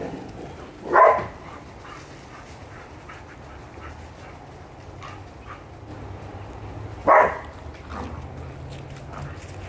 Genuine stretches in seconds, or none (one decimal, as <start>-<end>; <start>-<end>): 0.0-9.7